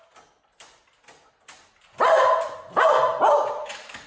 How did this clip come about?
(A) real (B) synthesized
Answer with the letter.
A